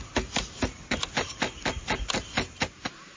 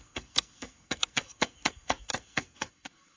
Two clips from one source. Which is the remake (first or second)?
second